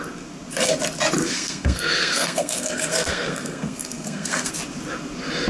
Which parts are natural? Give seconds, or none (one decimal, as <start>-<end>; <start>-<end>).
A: 0.0-1.2; 4.5-5.5